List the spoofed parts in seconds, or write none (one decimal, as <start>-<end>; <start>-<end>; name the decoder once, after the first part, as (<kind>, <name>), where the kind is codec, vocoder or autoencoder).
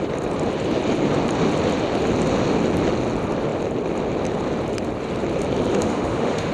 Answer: 5.7-6.5 (autoencoder, DAC-VAE)